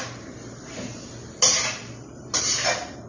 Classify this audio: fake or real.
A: real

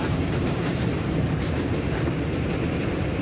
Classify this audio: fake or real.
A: fake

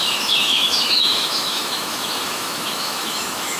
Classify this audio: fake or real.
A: fake